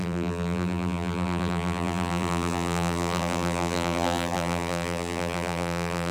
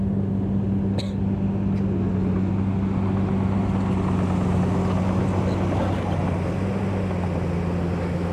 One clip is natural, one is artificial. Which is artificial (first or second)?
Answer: first